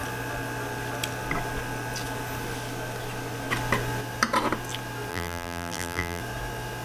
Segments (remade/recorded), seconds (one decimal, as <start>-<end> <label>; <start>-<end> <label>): 0.0-5.1 recorded; 5.1-6.2 remade; 6.2-6.8 recorded